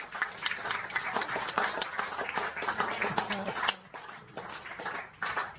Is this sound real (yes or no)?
yes